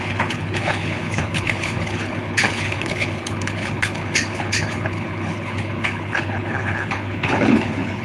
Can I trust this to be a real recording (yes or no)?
no